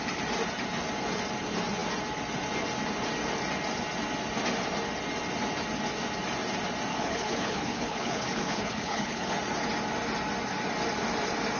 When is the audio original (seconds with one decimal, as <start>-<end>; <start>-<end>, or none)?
0.0-6.9; 9.3-11.6